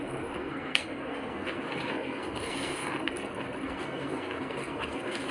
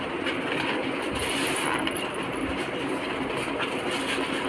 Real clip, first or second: second